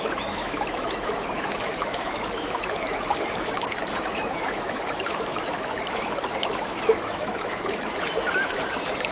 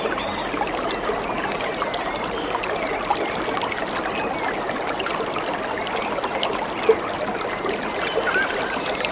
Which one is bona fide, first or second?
second